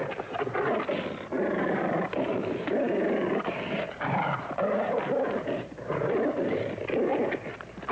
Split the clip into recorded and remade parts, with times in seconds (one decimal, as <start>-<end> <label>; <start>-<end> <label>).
0.0-1.3 recorded; 1.3-6.0 remade; 6.0-7.9 recorded